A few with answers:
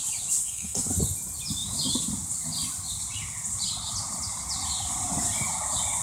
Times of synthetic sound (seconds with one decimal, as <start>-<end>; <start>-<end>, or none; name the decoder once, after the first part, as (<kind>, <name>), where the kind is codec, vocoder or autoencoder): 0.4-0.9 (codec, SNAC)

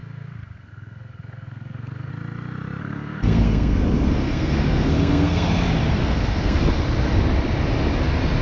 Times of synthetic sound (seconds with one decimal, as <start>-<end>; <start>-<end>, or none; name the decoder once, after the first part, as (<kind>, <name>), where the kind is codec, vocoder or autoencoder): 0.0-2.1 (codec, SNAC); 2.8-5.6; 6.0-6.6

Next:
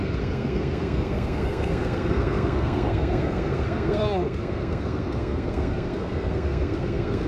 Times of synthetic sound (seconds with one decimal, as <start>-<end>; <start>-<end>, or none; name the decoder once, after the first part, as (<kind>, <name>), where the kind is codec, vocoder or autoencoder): 0.0-7.3 (codec, SNAC)

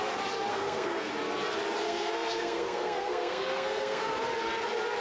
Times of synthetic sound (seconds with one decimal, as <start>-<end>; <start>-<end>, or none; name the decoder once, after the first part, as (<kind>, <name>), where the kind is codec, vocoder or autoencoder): 0.5-1.1 (codec, SNAC); 1.8-4.1